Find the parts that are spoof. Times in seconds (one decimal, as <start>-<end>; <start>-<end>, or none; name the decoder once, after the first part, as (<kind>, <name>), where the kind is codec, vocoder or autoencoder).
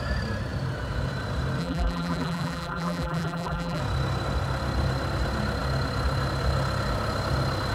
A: 1.6-3.8 (vocoder, BigVGAN v2)